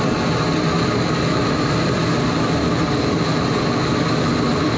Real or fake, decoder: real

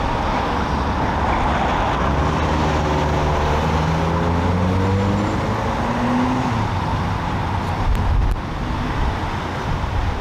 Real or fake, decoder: real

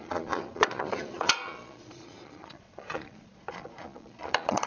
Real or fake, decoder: fake, vocoder, Vocos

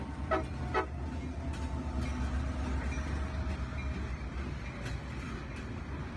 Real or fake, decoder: real